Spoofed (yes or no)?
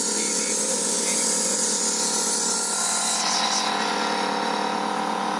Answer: yes